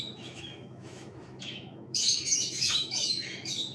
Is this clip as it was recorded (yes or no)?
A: no